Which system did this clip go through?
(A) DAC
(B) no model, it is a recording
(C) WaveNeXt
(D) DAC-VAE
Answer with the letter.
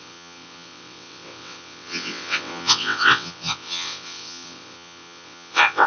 C